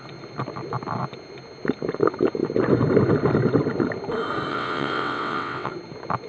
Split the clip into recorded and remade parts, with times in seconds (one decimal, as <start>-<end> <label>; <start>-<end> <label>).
0.0-4.5 recorded; 4.5-5.7 remade; 5.7-6.3 recorded